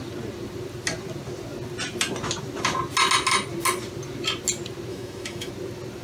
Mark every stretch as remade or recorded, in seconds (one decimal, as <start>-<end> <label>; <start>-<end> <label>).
0.0-4.9 recorded; 4.9-5.5 remade; 5.5-6.0 recorded